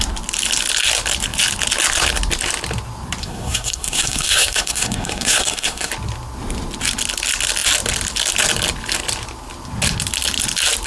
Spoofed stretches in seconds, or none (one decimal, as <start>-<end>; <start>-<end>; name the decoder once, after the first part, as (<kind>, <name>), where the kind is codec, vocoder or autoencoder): 3.2-5.9 (codec, SNAC)